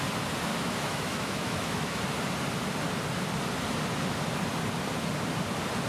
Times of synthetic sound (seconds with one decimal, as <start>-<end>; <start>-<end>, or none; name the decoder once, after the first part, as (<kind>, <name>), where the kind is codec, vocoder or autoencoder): 0.5-2.0 (autoencoder, DAC-VAE)